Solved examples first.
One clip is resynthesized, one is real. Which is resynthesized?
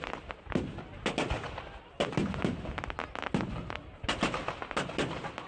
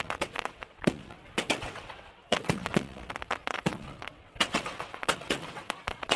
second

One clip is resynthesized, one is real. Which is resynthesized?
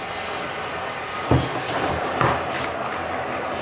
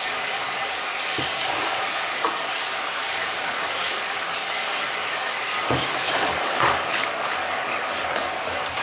second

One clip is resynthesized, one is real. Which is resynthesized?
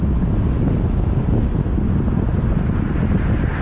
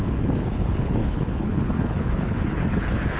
second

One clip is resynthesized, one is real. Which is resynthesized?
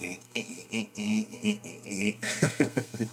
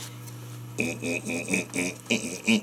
first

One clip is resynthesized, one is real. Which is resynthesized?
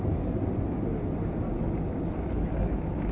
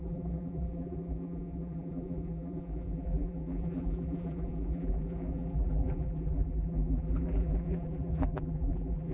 second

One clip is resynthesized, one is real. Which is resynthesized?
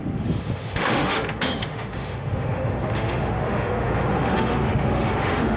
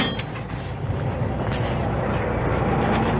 first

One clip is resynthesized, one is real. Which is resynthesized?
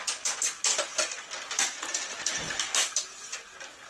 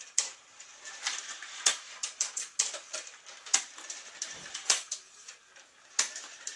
second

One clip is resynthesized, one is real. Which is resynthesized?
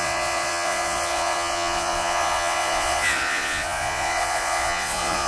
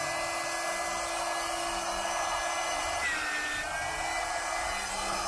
first